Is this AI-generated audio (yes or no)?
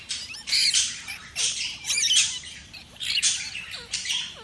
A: yes